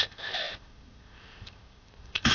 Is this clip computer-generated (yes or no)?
yes